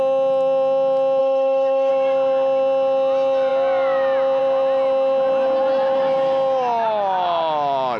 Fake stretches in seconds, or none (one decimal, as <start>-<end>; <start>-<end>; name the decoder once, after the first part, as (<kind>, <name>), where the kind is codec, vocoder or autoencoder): 1.2-1.9 (autoencoder, DAC-VAE)